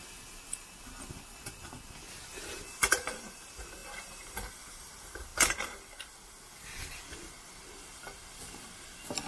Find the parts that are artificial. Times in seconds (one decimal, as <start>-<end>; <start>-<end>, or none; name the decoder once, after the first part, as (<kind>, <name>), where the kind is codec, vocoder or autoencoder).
none